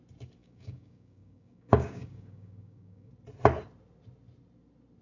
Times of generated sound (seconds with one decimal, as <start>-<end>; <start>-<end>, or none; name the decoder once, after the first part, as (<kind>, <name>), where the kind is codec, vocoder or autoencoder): 0.4-3.1 (codec, DAC)